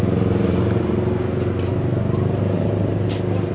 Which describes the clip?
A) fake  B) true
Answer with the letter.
B